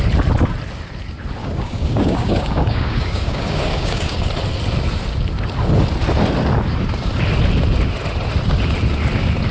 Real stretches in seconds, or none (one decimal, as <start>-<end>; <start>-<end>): 0.0-1.4; 4.2-9.5